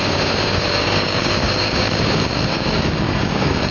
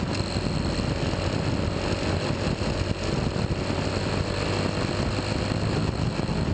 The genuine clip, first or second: second